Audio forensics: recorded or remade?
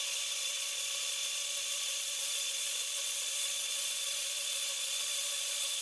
remade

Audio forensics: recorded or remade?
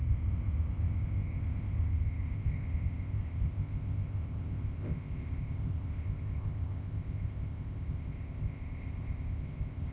remade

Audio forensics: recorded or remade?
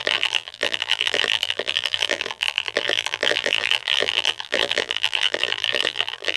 remade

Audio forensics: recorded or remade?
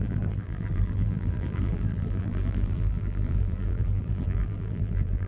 remade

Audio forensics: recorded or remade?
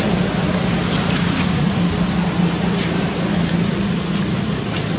recorded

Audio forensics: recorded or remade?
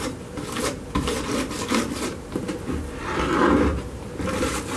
recorded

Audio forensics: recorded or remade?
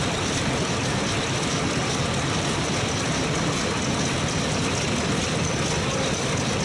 recorded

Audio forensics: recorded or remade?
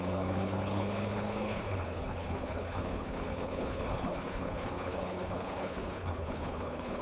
remade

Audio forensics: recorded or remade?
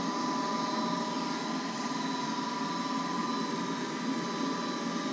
recorded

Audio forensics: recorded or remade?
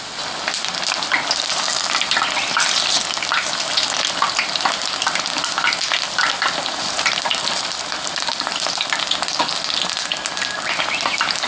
recorded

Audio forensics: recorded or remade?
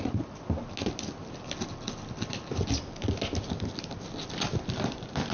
recorded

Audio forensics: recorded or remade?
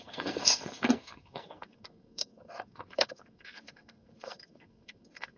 remade